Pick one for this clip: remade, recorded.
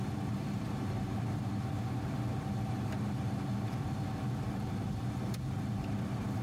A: remade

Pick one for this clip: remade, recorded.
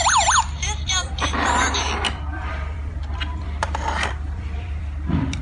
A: remade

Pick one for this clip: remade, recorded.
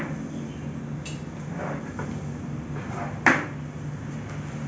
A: recorded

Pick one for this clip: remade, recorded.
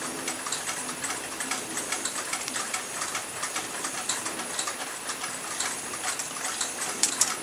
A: remade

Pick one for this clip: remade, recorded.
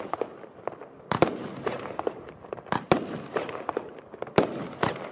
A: recorded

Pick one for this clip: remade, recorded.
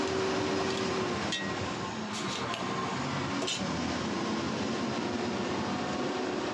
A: recorded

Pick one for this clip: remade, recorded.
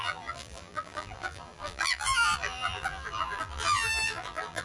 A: remade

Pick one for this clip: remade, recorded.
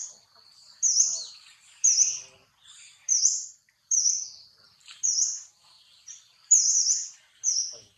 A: remade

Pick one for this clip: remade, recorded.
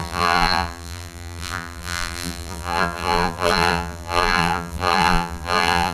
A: remade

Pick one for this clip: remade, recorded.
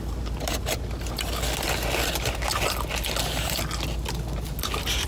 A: recorded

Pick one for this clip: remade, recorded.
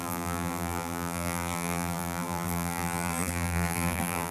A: remade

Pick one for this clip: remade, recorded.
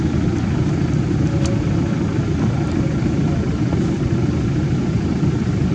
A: recorded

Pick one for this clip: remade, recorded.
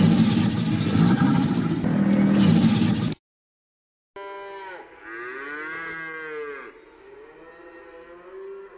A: recorded